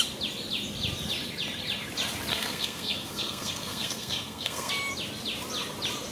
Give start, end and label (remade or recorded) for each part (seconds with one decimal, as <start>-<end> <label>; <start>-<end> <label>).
0.0-2.3 recorded; 2.3-4.7 remade; 4.7-6.1 recorded